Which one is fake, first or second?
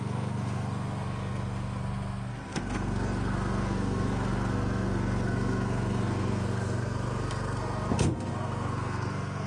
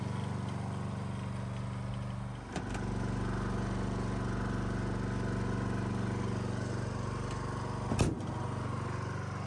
first